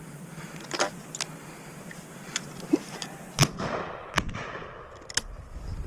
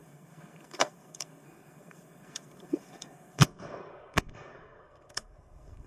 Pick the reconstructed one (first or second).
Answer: second